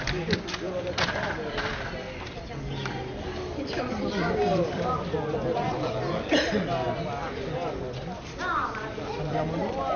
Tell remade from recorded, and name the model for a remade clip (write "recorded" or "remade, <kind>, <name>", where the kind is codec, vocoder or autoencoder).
recorded